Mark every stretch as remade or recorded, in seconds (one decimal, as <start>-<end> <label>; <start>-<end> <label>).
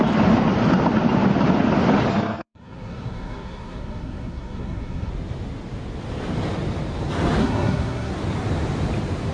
0.0-2.1 recorded; 2.1-5.1 remade; 5.1-7.4 recorded; 7.4-8.1 remade; 8.1-9.3 recorded